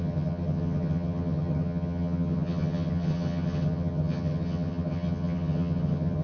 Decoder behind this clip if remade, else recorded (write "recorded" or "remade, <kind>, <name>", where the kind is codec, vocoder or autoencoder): remade, vocoder, HiFi-GAN